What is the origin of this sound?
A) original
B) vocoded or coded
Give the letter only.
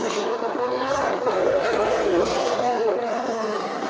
B